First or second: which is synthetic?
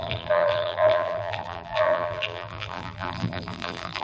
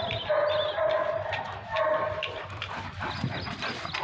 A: first